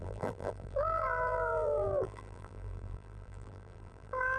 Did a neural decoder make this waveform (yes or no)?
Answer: yes